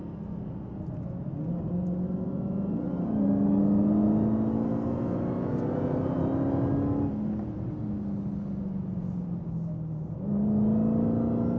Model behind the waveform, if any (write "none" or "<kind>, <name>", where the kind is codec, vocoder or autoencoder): none